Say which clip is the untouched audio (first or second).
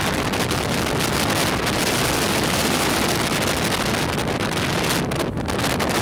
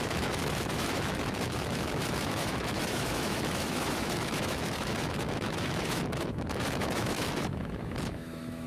first